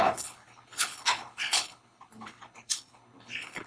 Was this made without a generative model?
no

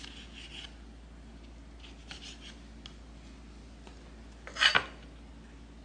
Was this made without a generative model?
yes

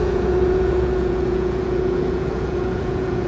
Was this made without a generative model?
no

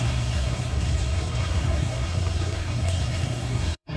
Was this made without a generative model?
no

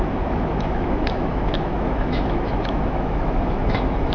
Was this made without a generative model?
no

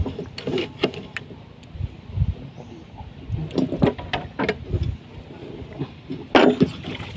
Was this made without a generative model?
yes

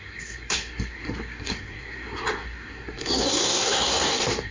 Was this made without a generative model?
no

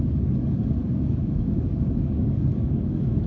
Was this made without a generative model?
no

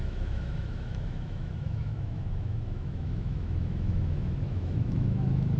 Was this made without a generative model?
no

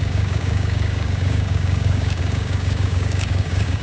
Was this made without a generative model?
no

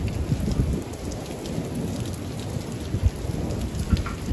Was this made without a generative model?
yes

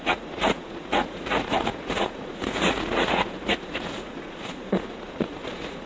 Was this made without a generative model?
no